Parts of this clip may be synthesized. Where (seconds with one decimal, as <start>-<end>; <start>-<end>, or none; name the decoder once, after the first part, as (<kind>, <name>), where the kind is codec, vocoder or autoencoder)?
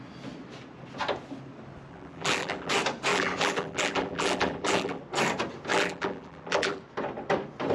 1.9-2.7 (vocoder, BigVGAN v2); 3.1-5.0; 5.7-6.8